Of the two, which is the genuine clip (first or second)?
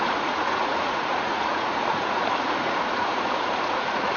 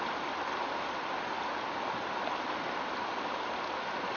second